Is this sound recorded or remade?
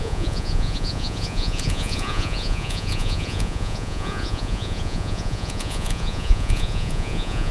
remade